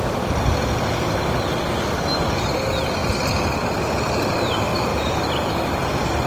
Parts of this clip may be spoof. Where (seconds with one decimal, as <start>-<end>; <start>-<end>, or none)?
4.9-5.5